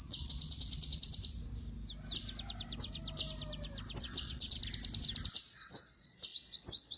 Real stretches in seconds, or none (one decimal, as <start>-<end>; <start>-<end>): 1.1-4.0; 4.6-5.4